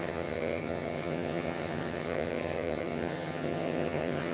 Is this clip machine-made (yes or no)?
yes